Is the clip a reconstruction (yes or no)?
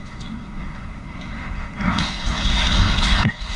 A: yes